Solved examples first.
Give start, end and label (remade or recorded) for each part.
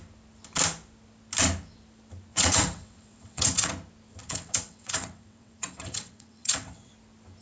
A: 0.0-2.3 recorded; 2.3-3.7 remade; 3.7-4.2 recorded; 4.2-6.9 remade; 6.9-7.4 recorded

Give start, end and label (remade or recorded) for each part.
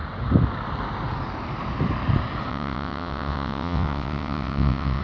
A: 0.0-2.5 recorded; 2.5-5.0 remade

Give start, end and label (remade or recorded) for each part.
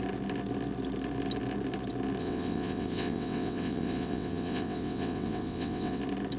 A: 0.0-2.2 recorded; 2.2-6.0 remade; 6.0-6.4 recorded